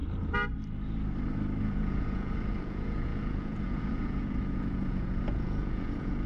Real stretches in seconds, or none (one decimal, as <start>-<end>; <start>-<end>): 0.0-1.6